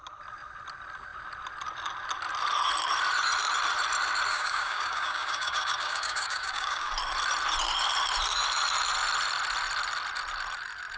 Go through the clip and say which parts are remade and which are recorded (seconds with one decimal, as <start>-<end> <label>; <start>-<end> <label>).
0.0-4.3 recorded; 4.3-6.9 remade; 6.9-11.0 recorded